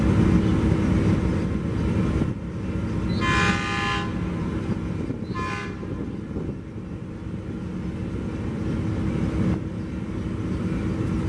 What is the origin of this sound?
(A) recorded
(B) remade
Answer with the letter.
A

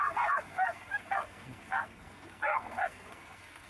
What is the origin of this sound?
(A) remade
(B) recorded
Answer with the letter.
A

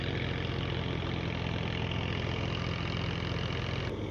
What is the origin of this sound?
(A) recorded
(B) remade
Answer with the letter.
A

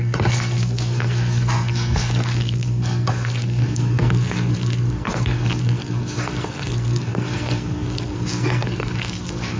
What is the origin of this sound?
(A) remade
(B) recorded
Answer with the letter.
A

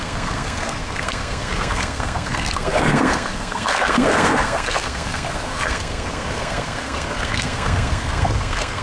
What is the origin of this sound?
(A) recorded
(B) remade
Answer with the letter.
B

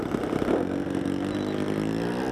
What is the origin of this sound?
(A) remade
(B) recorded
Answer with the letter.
B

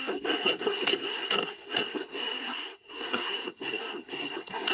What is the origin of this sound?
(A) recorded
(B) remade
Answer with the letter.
B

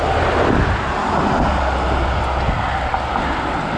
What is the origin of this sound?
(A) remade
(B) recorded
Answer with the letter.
B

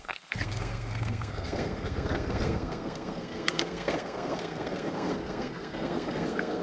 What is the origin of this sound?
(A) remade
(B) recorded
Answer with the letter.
A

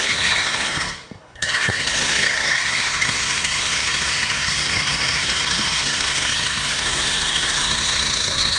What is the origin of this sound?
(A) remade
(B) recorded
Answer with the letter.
A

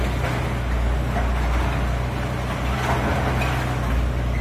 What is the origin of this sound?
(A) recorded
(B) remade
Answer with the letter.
A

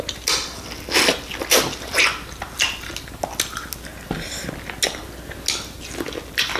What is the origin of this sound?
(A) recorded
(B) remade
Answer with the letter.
A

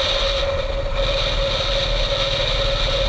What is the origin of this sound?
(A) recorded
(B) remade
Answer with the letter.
A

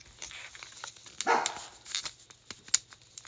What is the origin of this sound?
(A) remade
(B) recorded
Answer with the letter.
B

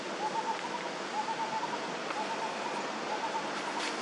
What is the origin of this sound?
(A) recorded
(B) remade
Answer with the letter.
A